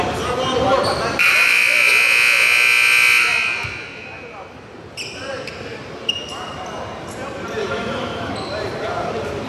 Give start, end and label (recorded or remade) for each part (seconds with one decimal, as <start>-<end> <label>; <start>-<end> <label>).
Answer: 0.0-7.6 recorded; 7.6-8.3 remade; 8.3-9.5 recorded